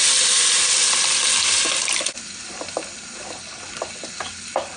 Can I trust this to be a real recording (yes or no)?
yes